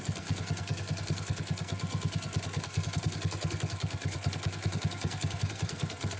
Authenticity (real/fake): fake